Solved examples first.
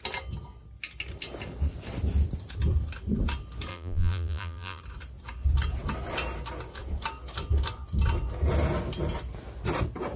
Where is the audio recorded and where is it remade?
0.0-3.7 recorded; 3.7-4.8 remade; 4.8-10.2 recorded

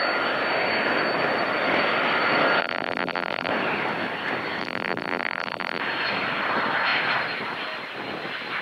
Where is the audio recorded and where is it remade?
0.0-2.6 recorded; 2.6-3.5 remade; 3.5-4.6 recorded; 4.6-5.8 remade; 5.8-8.6 recorded

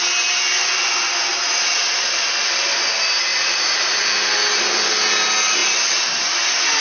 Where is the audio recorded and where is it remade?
0.0-1.3 recorded; 1.3-2.4 remade; 2.4-3.3 recorded; 3.3-4.3 remade; 4.3-5.6 recorded; 5.6-6.8 remade

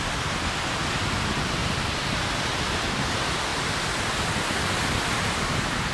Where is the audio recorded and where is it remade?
0.0-3.5 recorded; 3.5-5.9 remade

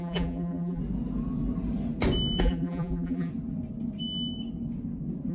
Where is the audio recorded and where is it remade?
0.0-0.8 remade; 0.8-2.4 recorded; 2.4-3.3 remade; 3.3-5.3 recorded

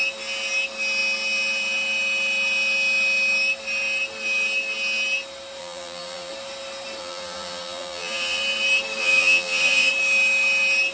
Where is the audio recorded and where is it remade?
0.0-5.6 recorded; 5.6-6.3 remade; 6.3-7.0 recorded; 7.0-8.4 remade; 8.4-9.0 recorded; 9.0-9.9 remade; 9.9-10.9 recorded

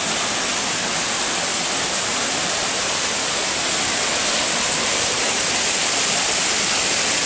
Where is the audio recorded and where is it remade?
0.0-1.5 recorded; 1.5-5.6 remade; 5.6-7.3 recorded